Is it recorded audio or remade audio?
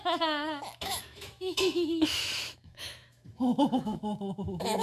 remade